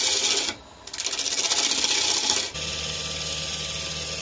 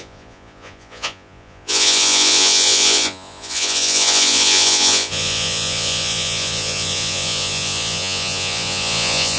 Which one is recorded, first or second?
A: first